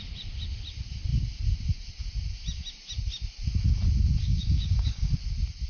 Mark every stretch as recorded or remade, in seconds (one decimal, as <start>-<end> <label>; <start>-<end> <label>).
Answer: 0.0-4.2 recorded; 4.2-5.1 remade; 5.1-5.7 recorded